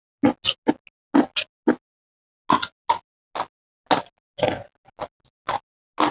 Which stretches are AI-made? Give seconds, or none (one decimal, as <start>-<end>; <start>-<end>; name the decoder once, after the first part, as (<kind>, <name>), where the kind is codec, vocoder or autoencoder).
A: none